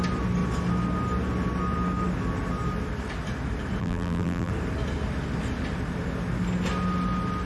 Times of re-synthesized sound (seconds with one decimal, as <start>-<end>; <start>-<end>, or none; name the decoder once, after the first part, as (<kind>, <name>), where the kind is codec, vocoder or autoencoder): 3.8-4.5 (vocoder, BigVGAN v2)